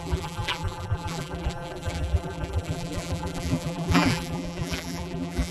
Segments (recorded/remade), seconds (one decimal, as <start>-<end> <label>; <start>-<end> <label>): 0.0-5.5 remade